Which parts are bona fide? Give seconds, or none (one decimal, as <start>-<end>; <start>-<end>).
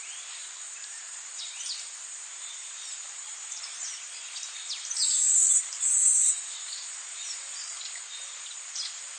0.0-0.4; 3.6-5.0; 8.0-9.2